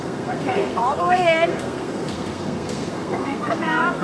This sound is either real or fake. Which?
fake